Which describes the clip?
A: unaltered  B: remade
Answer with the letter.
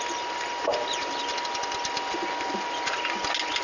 A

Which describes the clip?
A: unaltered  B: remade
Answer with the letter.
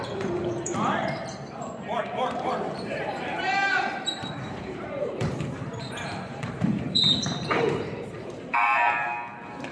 B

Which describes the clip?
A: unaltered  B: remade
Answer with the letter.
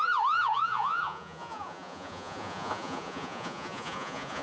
B